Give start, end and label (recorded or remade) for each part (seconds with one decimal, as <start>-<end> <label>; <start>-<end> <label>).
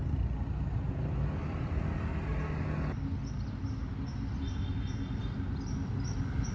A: 0.0-6.5 recorded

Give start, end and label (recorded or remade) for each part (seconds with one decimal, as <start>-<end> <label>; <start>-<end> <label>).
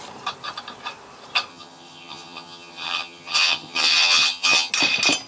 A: 0.0-1.5 recorded; 1.5-4.7 remade; 4.7-5.3 recorded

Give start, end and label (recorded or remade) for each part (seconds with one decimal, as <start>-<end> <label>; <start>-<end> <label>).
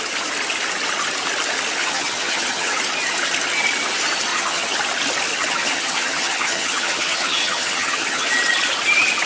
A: 0.0-1.8 recorded; 1.8-2.8 remade; 2.8-4.3 recorded; 4.3-4.8 remade; 4.8-5.3 recorded; 5.3-8.3 remade; 8.3-9.3 recorded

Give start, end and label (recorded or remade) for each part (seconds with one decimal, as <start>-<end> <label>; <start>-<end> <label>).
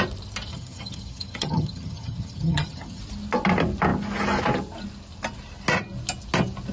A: 0.0-0.5 recorded; 0.5-3.0 remade; 3.0-6.7 recorded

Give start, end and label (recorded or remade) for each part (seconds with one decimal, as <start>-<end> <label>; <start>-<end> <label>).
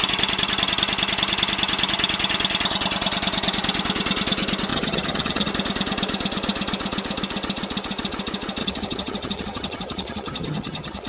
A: 0.0-4.7 recorded; 4.7-5.5 remade; 5.5-8.6 recorded; 8.6-11.1 remade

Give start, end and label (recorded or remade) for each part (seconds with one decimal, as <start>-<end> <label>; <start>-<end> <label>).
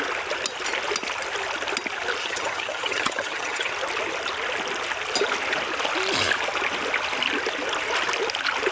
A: 0.0-2.2 recorded; 2.2-3.7 remade; 3.7-8.7 recorded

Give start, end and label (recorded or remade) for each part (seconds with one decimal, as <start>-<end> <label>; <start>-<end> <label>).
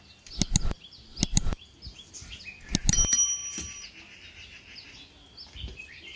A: 0.0-6.2 recorded